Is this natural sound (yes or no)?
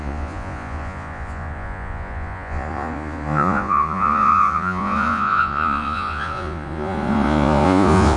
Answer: no